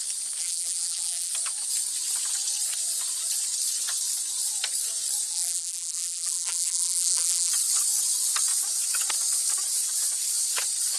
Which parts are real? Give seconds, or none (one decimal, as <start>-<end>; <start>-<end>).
0.0-0.4; 1.3-5.3; 7.5-11.0